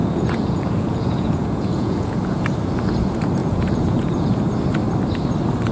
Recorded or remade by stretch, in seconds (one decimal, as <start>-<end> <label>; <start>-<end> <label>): 0.0-2.4 remade; 2.4-3.4 recorded; 3.4-4.4 remade; 4.4-5.7 recorded